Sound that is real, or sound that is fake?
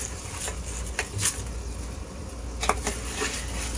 real